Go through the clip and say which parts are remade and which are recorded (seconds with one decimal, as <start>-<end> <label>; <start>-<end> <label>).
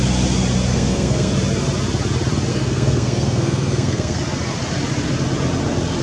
0.0-0.7 recorded; 0.7-1.3 remade; 1.3-2.5 recorded; 2.5-4.2 remade; 4.2-6.0 recorded